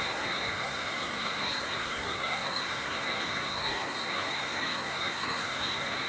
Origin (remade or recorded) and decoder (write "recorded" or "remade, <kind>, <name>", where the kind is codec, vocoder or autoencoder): remade, codec, SNAC